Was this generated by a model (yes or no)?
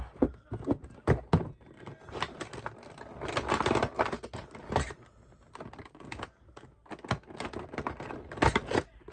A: no